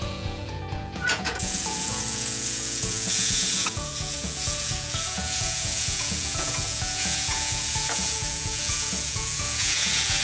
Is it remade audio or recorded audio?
remade